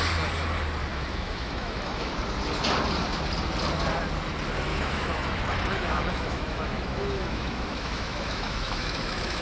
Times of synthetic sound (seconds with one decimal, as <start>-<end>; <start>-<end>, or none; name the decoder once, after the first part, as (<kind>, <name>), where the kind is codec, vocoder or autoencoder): 0.9-2.1 (autoencoder, DAC-VAE); 4.7-9.4

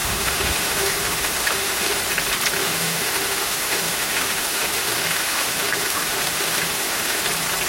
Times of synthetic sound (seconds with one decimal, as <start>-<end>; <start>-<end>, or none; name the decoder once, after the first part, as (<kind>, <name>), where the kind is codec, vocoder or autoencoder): 0.0-2.0 (autoencoder, DAC-VAE); 2.6-7.2

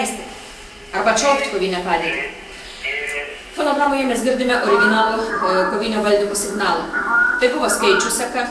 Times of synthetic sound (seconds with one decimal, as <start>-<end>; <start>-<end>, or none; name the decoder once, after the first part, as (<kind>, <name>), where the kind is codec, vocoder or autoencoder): 1.3-2.1 (autoencoder, DAC-VAE); 3.3-5.3; 5.8-7.7

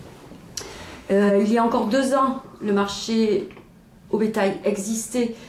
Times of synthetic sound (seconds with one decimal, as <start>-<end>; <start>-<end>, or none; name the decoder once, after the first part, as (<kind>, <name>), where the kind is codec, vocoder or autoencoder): 0.7-1.3 (autoencoder, DAC-VAE)

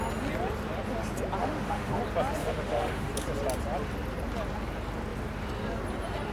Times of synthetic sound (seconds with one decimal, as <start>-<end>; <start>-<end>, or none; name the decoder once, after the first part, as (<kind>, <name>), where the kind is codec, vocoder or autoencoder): 1.4-2.0 (autoencoder, DAC-VAE); 2.4-3.1

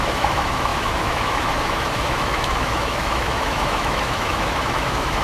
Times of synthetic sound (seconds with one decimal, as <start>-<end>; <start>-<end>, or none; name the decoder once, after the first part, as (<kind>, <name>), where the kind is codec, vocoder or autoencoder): 0.0-5.2 (autoencoder, DAC-VAE)

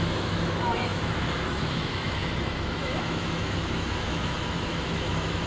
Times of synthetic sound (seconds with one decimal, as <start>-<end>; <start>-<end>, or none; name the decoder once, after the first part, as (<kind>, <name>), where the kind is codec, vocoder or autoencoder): 0.0-5.5 (autoencoder, DAC-VAE)

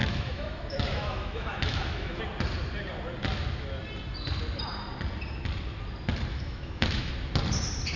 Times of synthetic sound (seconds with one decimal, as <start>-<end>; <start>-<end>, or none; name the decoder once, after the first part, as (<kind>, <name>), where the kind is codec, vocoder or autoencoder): 0.0-2.2 (autoencoder, DAC-VAE); 6.3-7.1